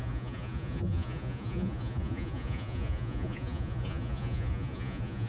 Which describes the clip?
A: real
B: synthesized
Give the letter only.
B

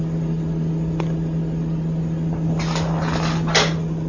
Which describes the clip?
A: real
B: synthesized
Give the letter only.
A